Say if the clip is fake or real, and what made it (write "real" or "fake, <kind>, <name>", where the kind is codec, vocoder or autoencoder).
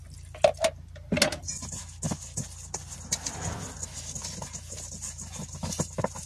real